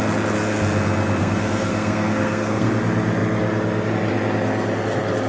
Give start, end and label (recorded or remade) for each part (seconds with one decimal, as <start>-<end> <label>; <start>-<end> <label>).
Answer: 0.0-1.2 recorded; 1.2-2.7 remade; 2.7-5.3 recorded